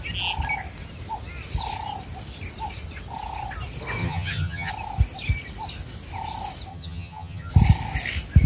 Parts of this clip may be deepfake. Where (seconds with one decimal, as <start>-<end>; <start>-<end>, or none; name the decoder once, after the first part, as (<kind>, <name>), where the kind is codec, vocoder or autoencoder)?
4.0-4.7 (vocoder, HiFi-GAN); 6.7-7.5